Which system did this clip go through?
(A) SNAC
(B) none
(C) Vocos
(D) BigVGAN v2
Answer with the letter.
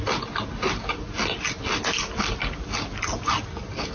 B